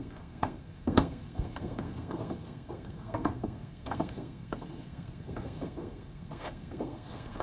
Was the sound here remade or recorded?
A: remade